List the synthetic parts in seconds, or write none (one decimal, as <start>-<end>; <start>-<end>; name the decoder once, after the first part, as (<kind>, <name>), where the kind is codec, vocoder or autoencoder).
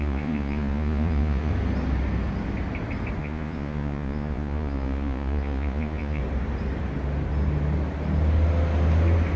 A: 0.0-1.5 (vocoder, Vocos); 3.2-6.2